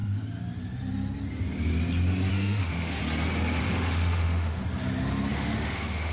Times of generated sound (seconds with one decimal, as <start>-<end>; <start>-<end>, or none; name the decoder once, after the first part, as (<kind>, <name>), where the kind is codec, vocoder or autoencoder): 2.3-3.0 (autoencoder, DAC-VAE); 3.6-4.6; 5.3-6.1